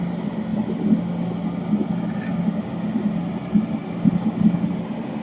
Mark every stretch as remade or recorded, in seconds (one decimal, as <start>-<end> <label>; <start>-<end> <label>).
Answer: 0.0-5.2 recorded